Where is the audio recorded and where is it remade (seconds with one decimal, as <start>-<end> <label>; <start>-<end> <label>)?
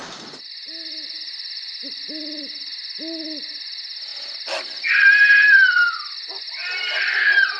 0.0-7.6 recorded